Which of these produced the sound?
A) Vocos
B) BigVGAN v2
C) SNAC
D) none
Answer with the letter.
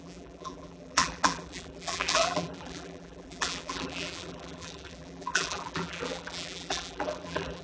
B